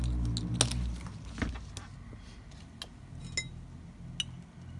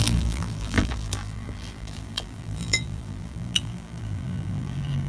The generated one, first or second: second